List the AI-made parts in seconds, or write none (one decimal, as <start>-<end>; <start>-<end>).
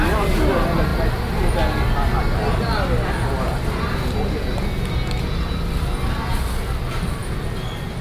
none